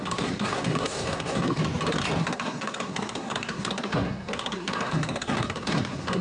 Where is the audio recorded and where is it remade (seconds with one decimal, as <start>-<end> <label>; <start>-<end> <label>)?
0.0-1.6 remade; 1.6-2.2 recorded; 2.2-6.2 remade